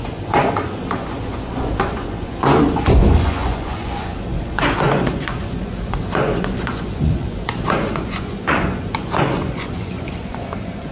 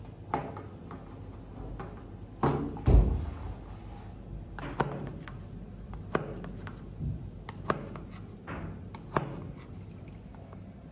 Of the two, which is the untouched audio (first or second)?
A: second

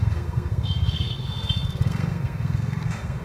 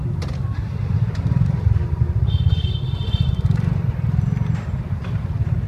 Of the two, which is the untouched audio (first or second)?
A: second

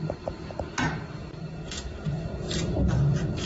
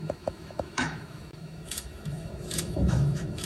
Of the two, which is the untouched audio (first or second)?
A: first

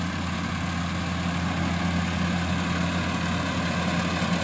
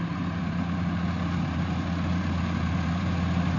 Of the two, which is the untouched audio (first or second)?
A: first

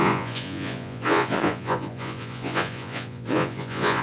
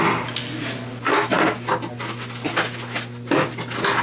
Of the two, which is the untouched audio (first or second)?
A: second